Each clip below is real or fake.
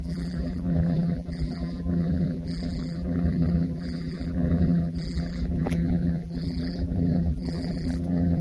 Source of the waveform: fake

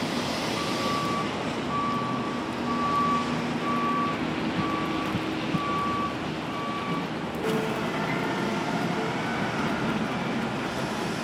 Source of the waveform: real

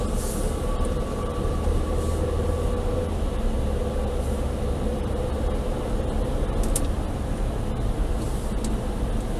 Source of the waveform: real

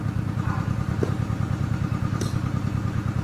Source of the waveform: fake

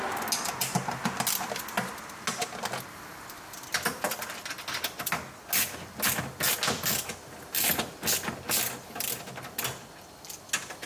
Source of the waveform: real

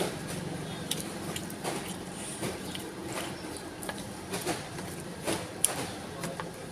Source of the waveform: fake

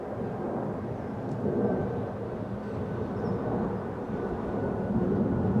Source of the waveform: real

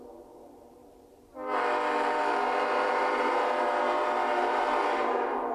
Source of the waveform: fake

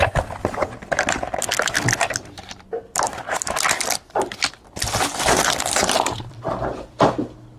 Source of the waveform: fake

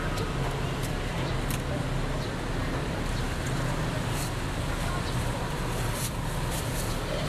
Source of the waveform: real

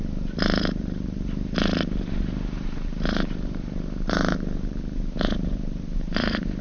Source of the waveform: fake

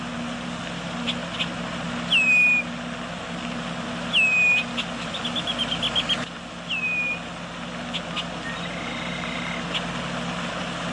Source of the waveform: real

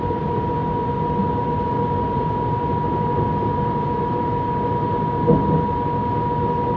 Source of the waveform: real